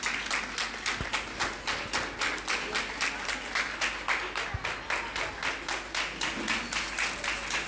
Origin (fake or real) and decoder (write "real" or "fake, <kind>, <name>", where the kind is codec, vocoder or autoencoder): real